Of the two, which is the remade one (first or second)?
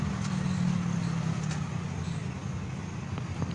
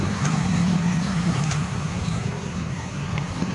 second